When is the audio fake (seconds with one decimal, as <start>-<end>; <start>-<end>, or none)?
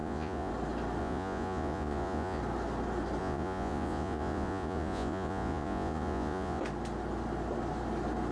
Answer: 0.0-0.5; 1.0-2.4; 3.2-6.6